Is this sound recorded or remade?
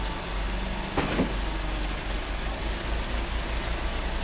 recorded